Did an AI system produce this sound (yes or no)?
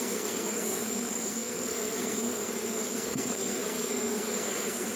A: yes